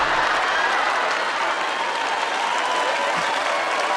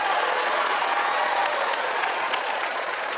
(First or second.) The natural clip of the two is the first